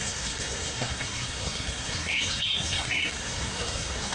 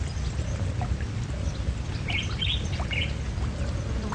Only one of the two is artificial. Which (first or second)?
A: first